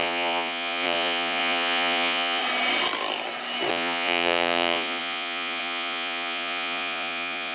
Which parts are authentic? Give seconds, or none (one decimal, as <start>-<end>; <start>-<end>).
2.4-3.7